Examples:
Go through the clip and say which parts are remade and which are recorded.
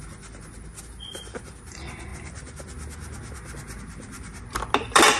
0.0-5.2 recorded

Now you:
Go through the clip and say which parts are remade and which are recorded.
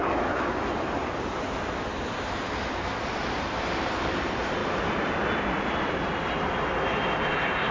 0.0-0.9 remade; 0.9-7.7 recorded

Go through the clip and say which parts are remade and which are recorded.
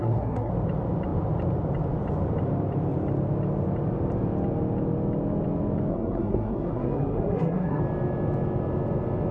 0.0-0.5 remade; 0.5-5.9 recorded; 5.9-7.8 remade; 7.8-9.3 recorded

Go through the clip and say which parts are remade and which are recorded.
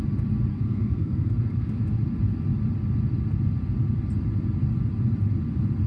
0.0-0.5 recorded; 0.5-1.8 remade; 1.8-5.9 recorded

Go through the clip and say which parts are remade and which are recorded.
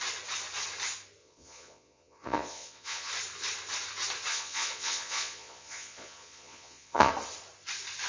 0.0-1.2 recorded; 1.2-3.1 remade; 3.1-4.3 recorded; 4.3-7.1 remade; 7.1-8.1 recorded